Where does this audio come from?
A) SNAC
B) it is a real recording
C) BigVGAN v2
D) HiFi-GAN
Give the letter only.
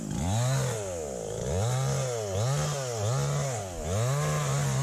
B